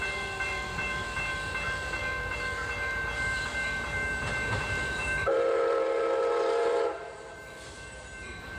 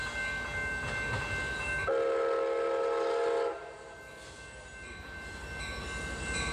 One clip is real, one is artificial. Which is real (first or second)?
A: second